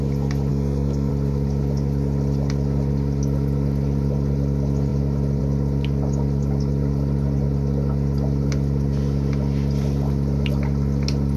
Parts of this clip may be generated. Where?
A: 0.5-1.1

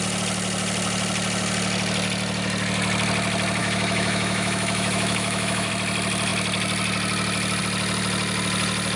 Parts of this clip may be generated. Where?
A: 3.6-5.7

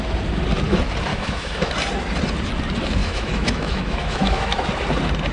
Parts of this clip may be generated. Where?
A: 1.1-1.7; 3.0-4.7

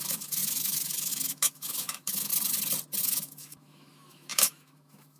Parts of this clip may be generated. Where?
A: 0.0-2.3; 3.0-5.2

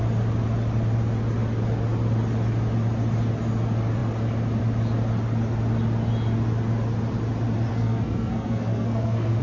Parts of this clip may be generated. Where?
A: 7.7-9.4

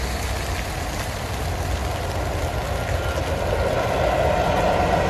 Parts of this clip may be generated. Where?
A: none